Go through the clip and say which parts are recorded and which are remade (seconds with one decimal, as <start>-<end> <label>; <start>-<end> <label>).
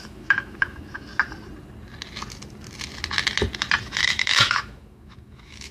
0.0-1.1 remade; 1.1-3.8 recorded; 3.8-5.7 remade